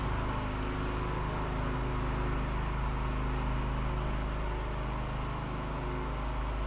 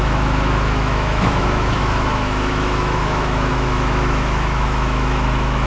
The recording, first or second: first